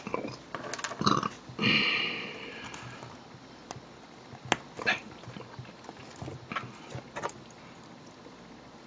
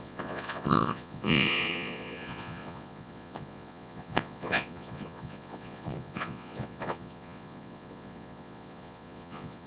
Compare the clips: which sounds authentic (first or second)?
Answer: first